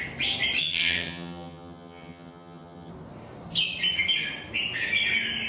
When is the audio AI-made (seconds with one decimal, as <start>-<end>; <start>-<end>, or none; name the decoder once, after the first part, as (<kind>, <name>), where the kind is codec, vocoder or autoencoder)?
0.6-2.9 (vocoder, HiFi-GAN)

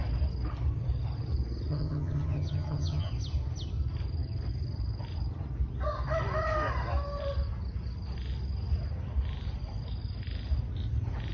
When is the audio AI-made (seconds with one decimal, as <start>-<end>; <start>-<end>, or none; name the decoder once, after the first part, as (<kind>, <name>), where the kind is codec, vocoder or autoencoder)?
1.7-3.1 (vocoder, HiFi-GAN)

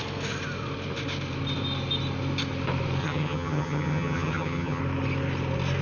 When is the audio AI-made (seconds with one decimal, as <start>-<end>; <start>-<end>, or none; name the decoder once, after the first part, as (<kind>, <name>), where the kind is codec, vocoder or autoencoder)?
3.0-4.8 (vocoder, HiFi-GAN)